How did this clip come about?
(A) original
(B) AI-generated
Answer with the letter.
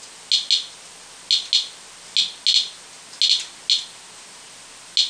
A